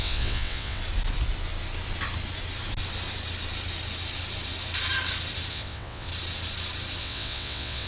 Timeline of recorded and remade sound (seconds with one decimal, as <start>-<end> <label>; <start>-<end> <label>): 0.0-0.8 remade; 0.8-5.5 recorded; 5.5-6.1 remade; 6.1-7.0 recorded; 7.0-7.9 remade